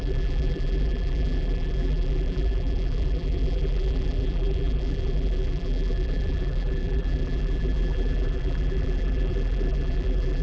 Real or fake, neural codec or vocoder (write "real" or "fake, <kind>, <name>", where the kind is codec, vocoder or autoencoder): fake, vocoder, BigVGAN v2